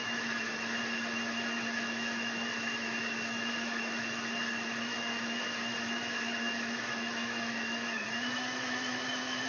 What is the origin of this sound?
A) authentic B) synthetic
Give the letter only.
B